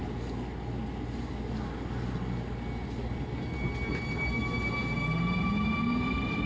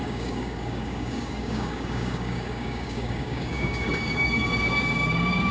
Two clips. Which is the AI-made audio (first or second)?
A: second